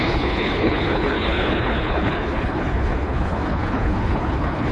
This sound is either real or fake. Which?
fake